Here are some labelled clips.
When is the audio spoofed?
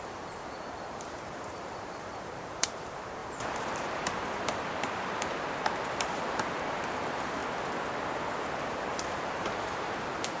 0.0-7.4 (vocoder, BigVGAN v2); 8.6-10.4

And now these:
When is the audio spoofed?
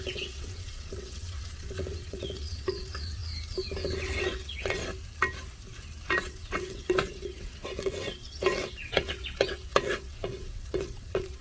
0.0-3.2 (vocoder, WaveNeXt); 4.2-4.8; 6.2-11.4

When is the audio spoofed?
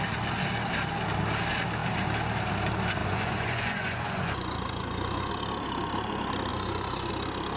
3.0-5.3 (vocoder, Vocos); 6.5-7.1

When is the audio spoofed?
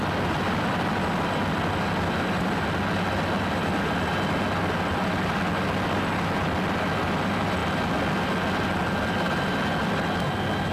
none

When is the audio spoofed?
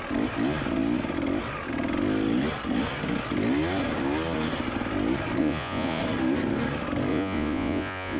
5.4-6.0 (vocoder, Vocos); 7.1-8.2